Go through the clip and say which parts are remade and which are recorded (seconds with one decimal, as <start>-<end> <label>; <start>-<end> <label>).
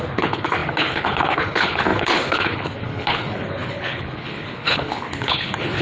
0.0-5.8 remade